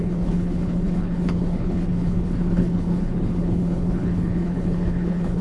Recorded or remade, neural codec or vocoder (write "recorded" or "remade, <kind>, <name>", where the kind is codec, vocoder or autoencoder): remade, codec, HILCodec